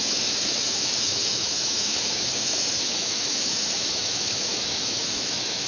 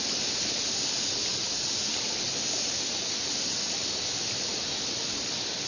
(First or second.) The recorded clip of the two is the second